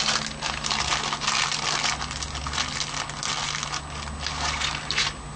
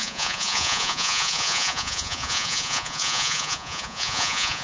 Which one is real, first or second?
first